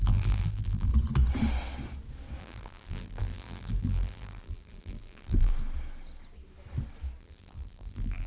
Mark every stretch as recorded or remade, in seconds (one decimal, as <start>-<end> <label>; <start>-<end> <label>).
0.0-0.9 remade; 0.9-2.4 recorded; 2.4-5.5 remade; 5.5-7.2 recorded; 7.2-8.3 remade